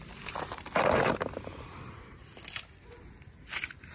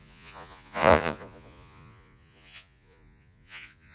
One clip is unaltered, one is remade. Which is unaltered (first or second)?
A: first